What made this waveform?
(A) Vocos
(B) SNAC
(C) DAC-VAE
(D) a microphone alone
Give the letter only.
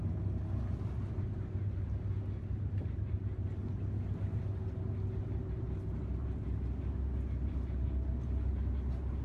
D